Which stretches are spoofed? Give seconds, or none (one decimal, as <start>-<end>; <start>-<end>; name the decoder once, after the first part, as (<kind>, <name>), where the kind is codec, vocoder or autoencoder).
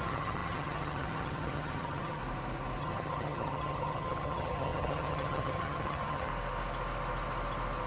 0.0-2.2 (vocoder, HiFi-GAN); 2.8-6.3